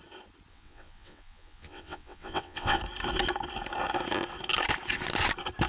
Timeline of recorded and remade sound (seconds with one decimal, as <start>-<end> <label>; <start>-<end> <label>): 0.0-0.5 recorded; 0.5-2.8 remade; 2.8-5.7 recorded